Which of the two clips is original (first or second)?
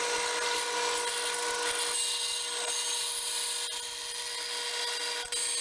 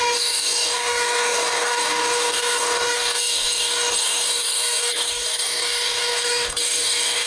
first